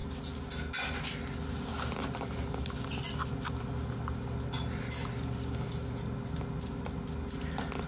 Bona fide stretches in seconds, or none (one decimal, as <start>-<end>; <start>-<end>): 0.0-7.9